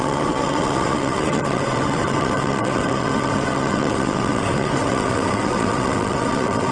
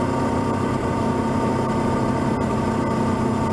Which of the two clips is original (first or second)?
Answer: second